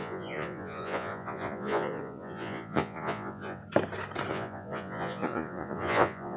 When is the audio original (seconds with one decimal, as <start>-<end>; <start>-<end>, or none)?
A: 3.6-4.3